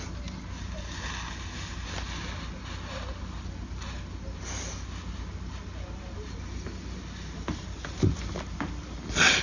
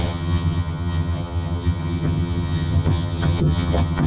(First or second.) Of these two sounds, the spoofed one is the second